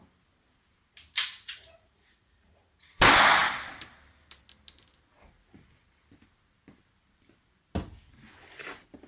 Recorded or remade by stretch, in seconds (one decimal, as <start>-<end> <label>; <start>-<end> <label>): 0.0-1.2 recorded; 1.2-3.0 remade; 3.0-9.1 recorded